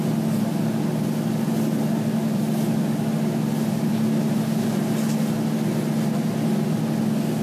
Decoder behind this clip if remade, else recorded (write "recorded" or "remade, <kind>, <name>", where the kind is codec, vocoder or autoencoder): recorded